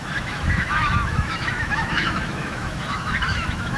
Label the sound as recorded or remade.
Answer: remade